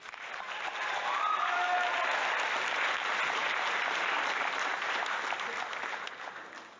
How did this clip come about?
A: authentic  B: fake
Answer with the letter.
A